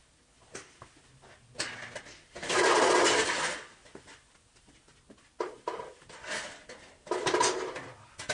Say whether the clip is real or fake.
real